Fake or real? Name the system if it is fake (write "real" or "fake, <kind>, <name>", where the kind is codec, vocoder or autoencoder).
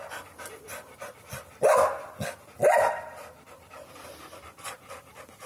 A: real